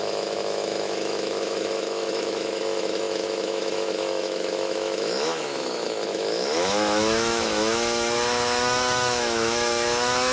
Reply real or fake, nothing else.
fake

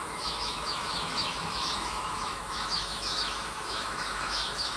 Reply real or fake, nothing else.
fake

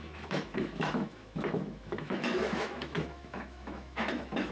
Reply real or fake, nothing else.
fake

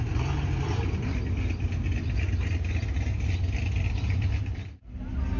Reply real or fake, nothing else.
real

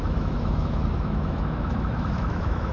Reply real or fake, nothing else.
fake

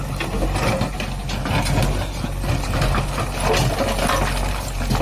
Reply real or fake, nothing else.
real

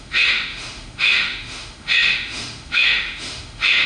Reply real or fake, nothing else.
fake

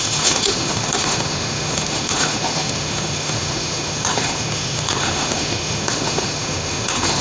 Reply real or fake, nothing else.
fake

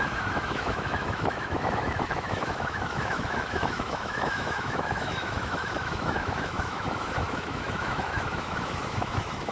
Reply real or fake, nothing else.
fake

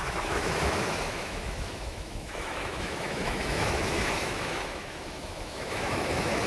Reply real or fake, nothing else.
fake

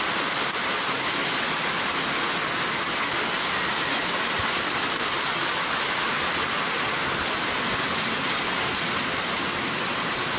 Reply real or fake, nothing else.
real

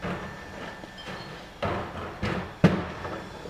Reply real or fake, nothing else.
real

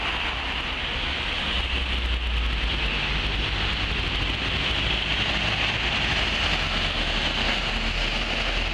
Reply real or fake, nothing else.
real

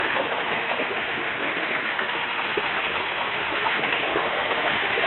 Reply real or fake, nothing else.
fake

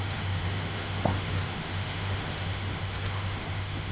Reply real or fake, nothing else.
fake